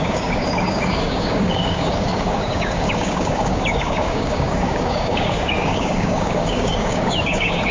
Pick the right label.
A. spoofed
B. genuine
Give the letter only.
A